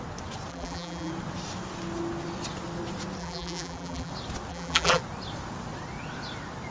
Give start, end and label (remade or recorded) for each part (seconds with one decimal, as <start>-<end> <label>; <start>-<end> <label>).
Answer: 0.0-0.5 recorded; 0.5-1.1 remade; 1.1-3.2 recorded; 3.2-4.1 remade; 4.1-4.5 recorded; 4.5-5.0 remade; 5.0-6.7 recorded